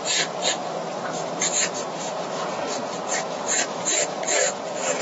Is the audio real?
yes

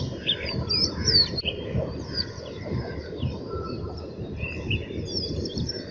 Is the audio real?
no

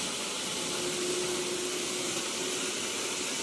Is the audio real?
yes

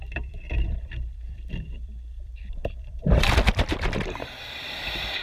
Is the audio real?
no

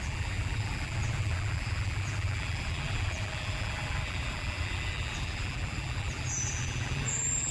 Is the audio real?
no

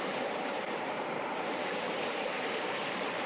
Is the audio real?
no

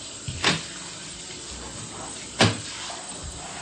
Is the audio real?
no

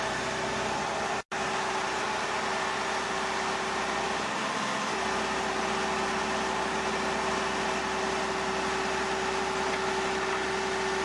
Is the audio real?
yes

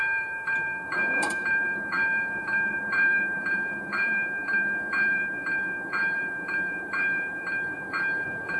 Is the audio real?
no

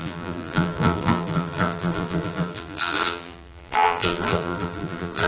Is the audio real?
no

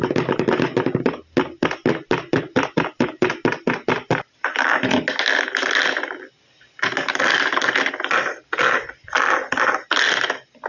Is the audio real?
yes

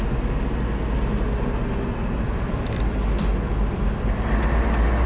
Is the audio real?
yes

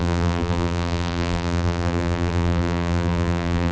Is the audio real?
no